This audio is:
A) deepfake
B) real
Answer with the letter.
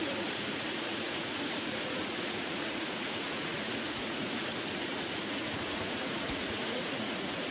A